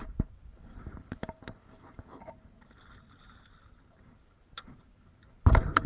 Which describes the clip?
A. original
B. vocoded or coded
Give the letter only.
A